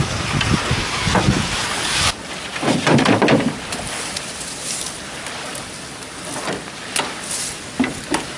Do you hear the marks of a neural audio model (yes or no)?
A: no